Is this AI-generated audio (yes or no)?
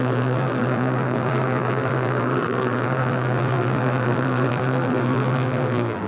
yes